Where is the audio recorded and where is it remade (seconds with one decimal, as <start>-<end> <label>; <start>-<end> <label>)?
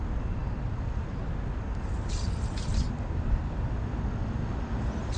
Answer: 0.0-5.2 recorded